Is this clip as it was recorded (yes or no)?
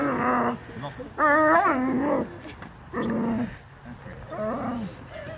yes